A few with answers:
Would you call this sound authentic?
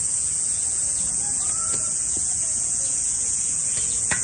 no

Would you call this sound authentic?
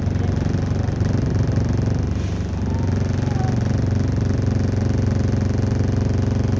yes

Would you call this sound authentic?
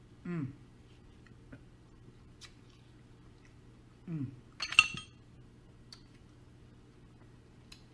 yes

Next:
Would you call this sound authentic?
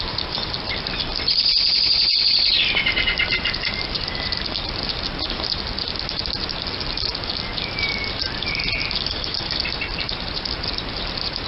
yes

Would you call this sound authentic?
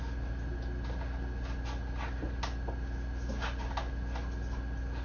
yes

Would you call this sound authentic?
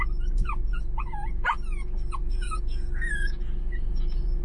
no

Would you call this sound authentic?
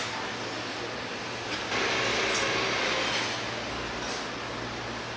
yes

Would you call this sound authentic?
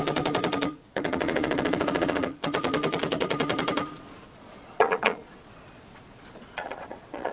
no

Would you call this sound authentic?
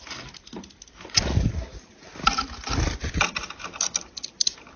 yes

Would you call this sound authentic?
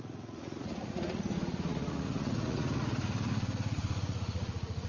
no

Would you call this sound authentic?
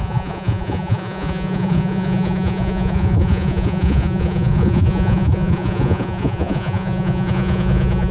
no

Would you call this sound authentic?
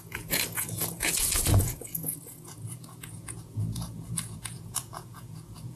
no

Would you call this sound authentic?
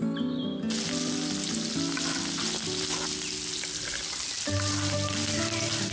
yes